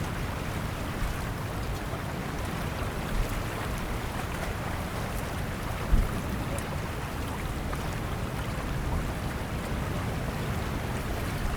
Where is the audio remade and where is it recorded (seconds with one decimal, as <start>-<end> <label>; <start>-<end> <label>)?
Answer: 0.0-2.2 recorded; 2.2-5.9 remade; 5.9-11.6 recorded